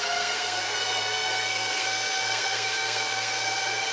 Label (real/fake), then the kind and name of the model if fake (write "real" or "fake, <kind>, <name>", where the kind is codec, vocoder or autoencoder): fake, codec, SNAC